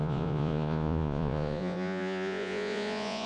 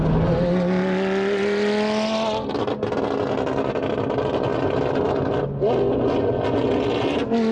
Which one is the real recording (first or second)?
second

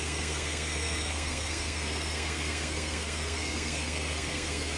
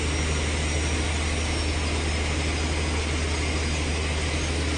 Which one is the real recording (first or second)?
second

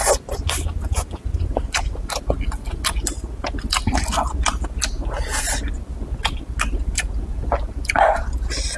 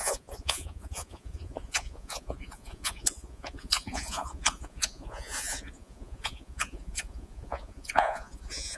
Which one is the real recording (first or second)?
first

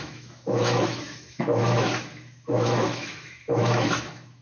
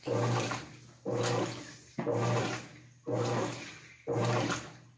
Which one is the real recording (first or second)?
second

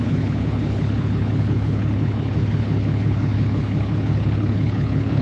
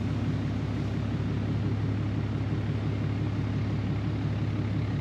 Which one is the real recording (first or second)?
second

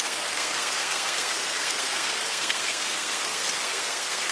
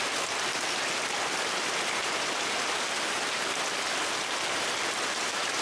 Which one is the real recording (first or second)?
second